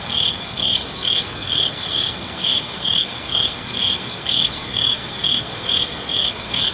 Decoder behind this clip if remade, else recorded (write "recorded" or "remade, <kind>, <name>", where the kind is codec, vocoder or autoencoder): remade, codec, SNAC